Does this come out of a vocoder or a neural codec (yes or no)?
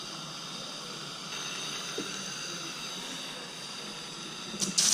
no